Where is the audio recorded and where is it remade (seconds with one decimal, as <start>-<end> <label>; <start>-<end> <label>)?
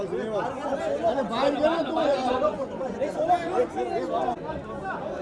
0.0-1.8 recorded; 1.8-3.2 remade; 3.2-5.2 recorded